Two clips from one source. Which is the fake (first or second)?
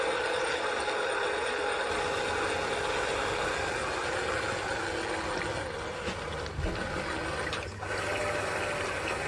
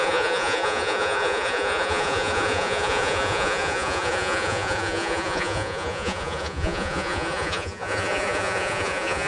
second